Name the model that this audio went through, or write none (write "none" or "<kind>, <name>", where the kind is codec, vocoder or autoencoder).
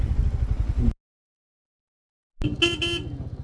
none